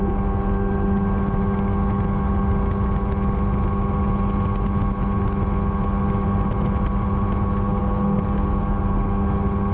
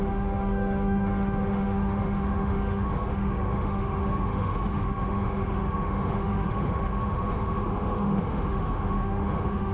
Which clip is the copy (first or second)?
second